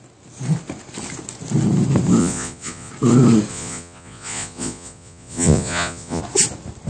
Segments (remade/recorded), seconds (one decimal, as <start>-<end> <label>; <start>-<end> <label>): 0.0-2.2 recorded; 2.2-2.9 remade; 2.9-3.5 recorded; 3.5-6.2 remade; 6.2-6.9 recorded